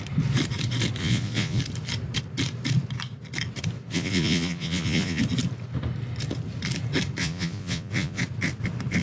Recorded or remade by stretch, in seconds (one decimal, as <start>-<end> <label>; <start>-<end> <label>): 0.0-1.0 recorded; 1.0-1.6 remade; 1.6-3.9 recorded; 3.9-5.2 remade; 5.2-7.2 recorded; 7.2-8.2 remade; 8.2-9.0 recorded